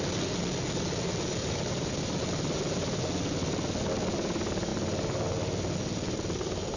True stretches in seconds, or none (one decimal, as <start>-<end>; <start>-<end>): 0.0-1.4; 2.2-6.8